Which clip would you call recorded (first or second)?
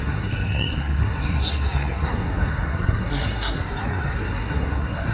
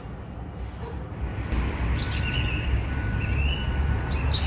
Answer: second